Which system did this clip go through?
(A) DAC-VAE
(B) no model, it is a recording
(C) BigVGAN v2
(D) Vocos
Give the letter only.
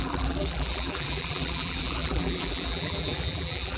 C